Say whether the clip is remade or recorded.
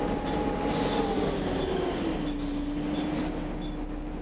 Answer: recorded